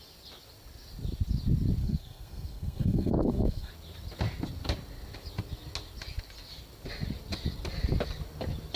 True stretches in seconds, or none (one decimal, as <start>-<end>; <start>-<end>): 0.0-1.8; 3.7-8.8